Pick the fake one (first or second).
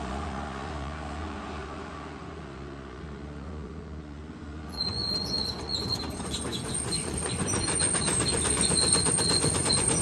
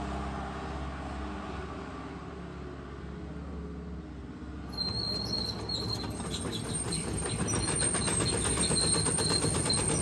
first